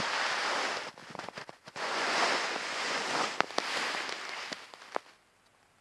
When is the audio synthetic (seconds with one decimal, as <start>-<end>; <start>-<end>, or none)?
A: 1.0-3.3